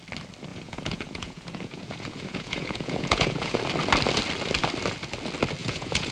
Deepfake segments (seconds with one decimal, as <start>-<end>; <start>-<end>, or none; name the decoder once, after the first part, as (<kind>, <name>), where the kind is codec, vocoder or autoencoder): 0.5-3.6 (vocoder, Vocos); 5.6-6.1